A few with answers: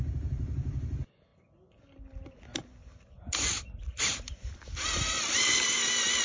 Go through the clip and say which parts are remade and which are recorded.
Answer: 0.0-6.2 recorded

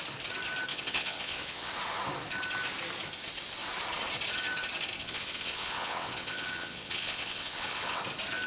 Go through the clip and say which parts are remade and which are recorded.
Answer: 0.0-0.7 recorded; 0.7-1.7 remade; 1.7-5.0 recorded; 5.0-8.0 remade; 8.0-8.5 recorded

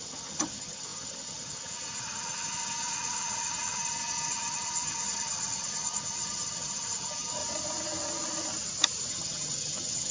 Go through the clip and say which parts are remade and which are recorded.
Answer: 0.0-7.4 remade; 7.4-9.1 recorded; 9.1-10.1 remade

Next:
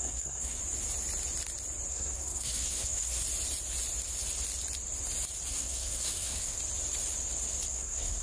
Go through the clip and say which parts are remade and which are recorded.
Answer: 0.0-0.6 remade; 0.6-1.9 recorded; 1.9-3.2 remade; 3.2-5.5 recorded; 5.5-6.6 remade; 6.6-7.7 recorded; 7.7-8.2 remade

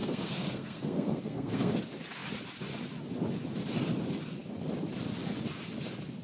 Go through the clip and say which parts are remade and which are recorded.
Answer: 0.0-1.8 remade; 1.8-6.2 recorded

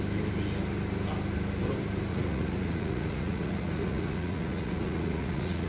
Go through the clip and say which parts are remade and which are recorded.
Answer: 0.0-2.1 recorded; 2.1-5.7 remade

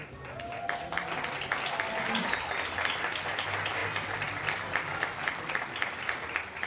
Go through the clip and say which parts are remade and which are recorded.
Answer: 0.0-6.7 recorded

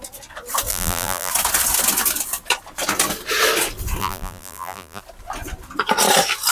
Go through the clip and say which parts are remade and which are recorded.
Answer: 0.0-0.7 recorded; 0.7-1.3 remade; 1.3-4.0 recorded; 4.0-5.0 remade; 5.0-6.5 recorded